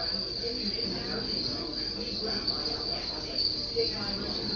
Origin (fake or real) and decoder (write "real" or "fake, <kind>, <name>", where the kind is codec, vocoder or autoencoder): real